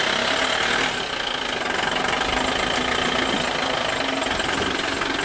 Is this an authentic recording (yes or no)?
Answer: yes